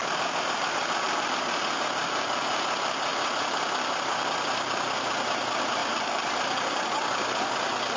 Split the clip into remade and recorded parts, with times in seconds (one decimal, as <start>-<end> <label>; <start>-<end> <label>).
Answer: 0.0-5.8 recorded; 5.8-6.5 remade; 6.5-8.0 recorded